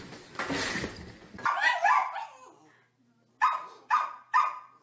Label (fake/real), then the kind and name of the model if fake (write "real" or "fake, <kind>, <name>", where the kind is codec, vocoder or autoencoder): real